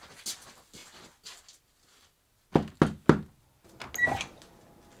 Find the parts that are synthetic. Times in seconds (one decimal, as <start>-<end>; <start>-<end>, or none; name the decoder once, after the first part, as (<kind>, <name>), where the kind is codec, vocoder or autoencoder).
none